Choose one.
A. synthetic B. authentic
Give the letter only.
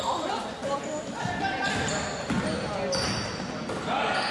B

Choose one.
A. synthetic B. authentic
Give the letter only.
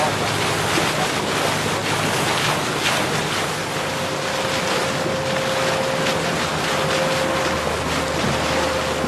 B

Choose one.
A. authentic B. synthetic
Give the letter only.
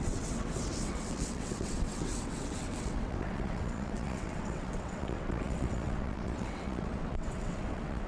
B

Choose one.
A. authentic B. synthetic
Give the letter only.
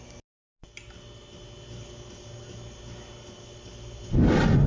A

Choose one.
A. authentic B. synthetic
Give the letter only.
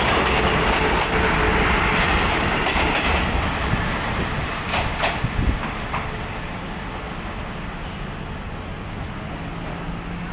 A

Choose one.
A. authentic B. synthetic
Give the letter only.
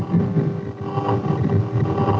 A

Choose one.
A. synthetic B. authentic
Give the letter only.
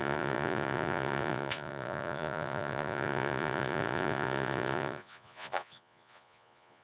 A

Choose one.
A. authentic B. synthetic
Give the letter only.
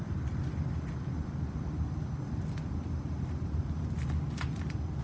A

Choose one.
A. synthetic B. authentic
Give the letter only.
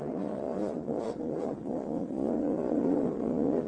A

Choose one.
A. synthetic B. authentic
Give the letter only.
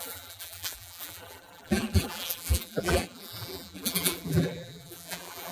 A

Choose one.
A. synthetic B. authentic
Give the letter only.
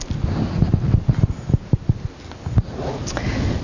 B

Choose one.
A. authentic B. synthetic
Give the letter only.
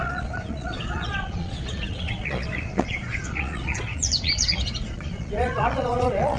B